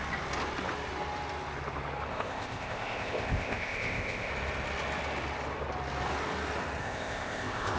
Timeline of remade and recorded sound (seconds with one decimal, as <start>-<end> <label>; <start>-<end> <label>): 0.0-2.1 recorded; 2.1-4.3 remade; 4.3-6.8 recorded; 6.8-7.8 remade